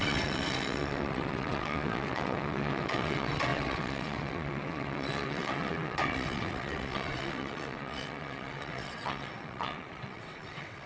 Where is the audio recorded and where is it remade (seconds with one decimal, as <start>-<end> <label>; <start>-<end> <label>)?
0.0-10.9 remade